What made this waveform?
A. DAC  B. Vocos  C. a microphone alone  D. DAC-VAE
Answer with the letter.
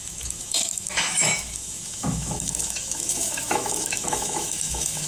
D